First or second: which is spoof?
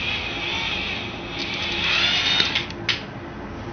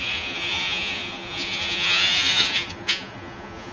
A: second